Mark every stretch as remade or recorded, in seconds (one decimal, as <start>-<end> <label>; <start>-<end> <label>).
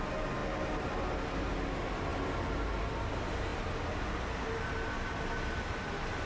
0.0-6.3 recorded